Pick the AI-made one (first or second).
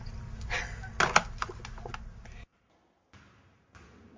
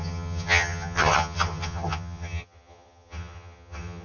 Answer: second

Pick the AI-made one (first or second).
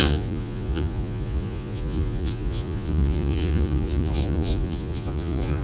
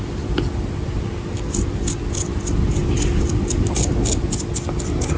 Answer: first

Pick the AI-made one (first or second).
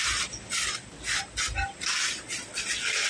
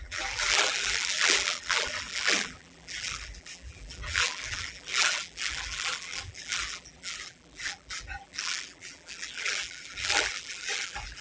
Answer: second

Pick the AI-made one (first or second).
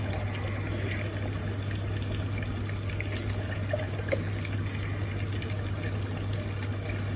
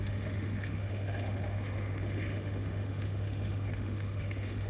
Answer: second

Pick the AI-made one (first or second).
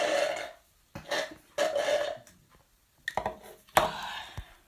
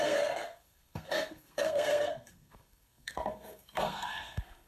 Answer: second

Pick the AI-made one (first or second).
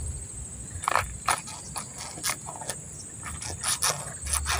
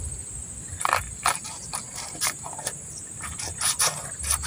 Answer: second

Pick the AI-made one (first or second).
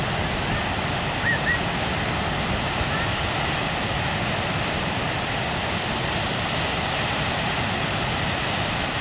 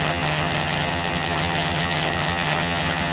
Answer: second